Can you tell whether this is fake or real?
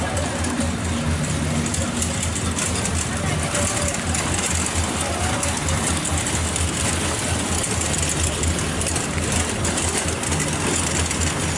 real